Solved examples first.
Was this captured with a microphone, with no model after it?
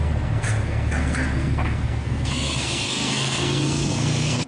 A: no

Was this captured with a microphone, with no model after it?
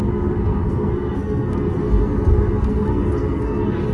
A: no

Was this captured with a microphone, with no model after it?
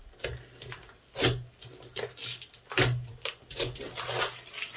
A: yes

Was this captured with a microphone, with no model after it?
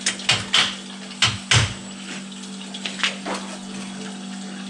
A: yes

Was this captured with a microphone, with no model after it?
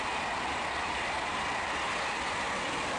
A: yes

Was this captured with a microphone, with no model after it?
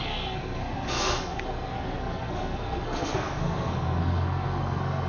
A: no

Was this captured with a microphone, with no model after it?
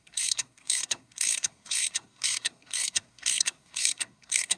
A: no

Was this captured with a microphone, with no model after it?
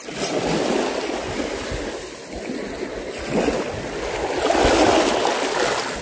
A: yes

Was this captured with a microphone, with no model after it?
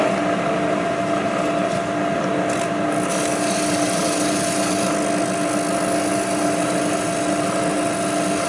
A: yes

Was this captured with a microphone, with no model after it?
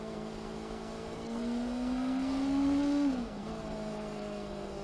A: no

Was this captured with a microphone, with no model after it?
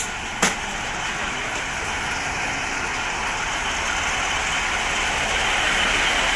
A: yes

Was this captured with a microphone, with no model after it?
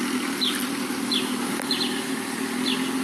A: yes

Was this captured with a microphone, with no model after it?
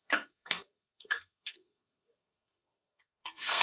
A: no